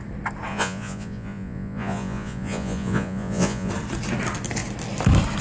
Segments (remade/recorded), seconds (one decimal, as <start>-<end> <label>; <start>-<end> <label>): 0.0-0.5 recorded; 0.5-3.7 remade; 3.7-5.4 recorded